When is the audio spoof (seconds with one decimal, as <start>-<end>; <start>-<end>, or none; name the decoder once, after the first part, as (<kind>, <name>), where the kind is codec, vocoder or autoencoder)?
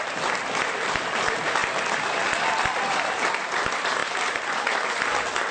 none